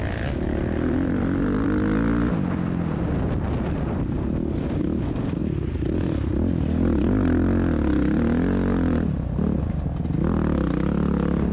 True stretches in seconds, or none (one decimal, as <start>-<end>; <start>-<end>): 0.0-11.5